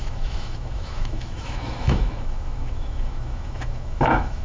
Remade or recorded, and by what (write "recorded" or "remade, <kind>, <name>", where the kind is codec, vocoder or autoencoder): remade, autoencoder, DAC-VAE